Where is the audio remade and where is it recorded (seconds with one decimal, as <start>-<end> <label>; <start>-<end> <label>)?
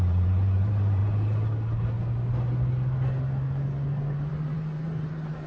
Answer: 0.0-1.0 remade; 1.0-4.3 recorded; 4.3-5.5 remade